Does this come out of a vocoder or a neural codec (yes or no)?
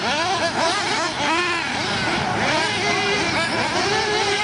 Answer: no